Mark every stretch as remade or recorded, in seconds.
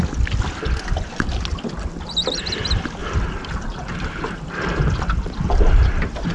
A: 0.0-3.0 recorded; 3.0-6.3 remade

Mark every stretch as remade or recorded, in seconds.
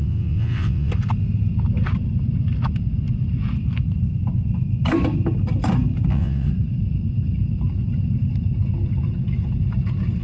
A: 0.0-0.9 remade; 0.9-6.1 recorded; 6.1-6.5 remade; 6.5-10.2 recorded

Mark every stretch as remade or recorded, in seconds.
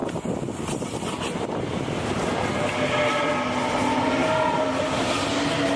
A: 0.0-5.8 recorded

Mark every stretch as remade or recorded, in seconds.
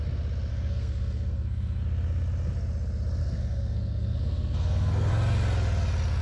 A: 0.0-0.5 recorded; 0.5-1.8 remade; 1.8-3.2 recorded; 3.2-5.1 remade; 5.1-6.2 recorded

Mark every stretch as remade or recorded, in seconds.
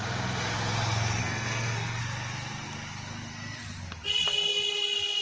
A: 0.0-1.2 recorded; 1.2-2.0 remade; 2.0-5.2 recorded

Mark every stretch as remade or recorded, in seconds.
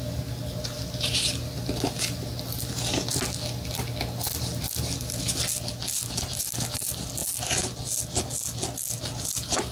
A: 0.0-9.7 recorded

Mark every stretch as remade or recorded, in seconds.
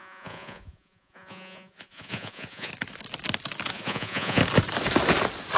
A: 0.0-2.7 remade; 2.7-3.7 recorded; 3.7-4.4 remade; 4.4-5.6 recorded